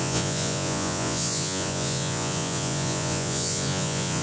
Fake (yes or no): yes